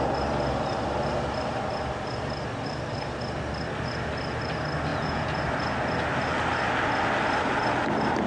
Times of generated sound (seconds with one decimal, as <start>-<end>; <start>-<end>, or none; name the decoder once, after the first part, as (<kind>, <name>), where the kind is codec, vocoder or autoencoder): 4.9-5.4 (vocoder, Vocos)